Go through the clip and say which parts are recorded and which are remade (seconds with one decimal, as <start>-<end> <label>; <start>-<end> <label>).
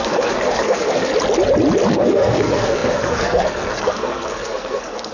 0.0-1.1 remade; 1.1-1.9 recorded; 1.9-5.1 remade